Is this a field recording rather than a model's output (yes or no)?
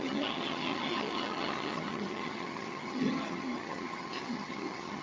no